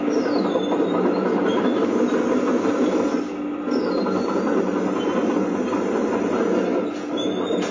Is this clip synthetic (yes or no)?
no